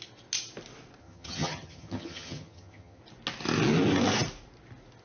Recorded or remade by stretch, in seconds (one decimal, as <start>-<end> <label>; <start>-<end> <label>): 0.0-1.0 recorded; 1.0-3.0 remade; 3.0-5.0 recorded